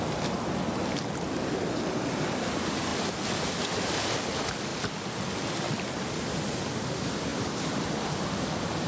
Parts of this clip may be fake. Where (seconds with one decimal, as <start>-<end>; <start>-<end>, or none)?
none